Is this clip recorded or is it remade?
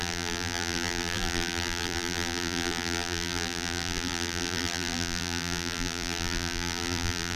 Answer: remade